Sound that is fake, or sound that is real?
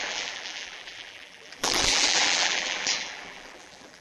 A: fake